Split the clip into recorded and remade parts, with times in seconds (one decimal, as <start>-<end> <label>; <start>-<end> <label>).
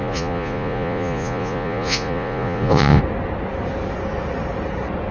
0.0-3.0 remade; 3.0-5.1 recorded